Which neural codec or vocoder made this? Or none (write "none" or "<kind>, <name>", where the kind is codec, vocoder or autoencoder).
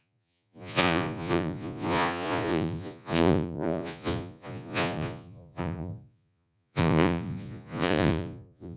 vocoder, Vocos